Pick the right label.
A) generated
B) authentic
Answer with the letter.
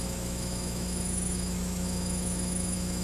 A